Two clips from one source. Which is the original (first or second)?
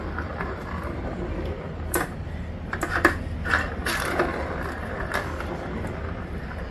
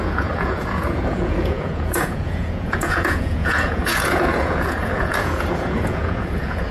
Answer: first